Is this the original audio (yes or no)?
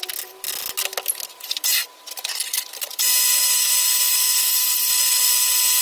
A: yes